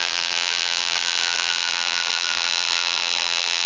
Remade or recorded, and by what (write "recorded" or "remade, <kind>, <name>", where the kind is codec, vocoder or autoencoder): remade, vocoder, BigVGAN v2